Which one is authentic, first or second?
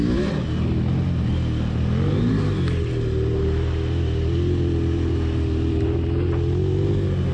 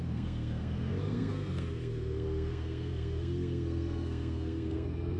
first